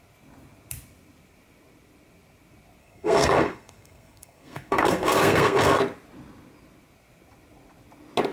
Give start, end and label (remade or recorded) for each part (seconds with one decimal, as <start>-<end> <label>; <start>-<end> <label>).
0.0-2.8 recorded; 2.8-5.8 remade; 5.8-8.3 recorded